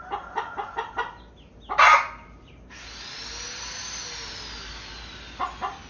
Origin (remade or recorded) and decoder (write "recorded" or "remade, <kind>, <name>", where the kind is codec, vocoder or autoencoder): recorded